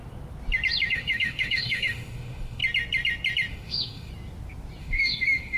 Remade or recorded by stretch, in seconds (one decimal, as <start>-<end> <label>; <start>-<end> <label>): 0.0-0.9 recorded; 0.9-2.6 remade; 2.6-3.5 recorded; 3.5-4.1 remade; 4.1-4.8 recorded; 4.8-5.6 remade